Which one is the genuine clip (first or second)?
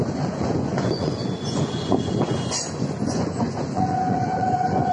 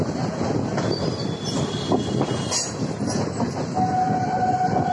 second